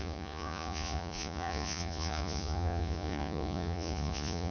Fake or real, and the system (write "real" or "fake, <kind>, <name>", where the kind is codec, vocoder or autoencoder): fake, vocoder, Vocos